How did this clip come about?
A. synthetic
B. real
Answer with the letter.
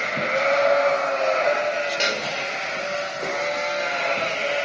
B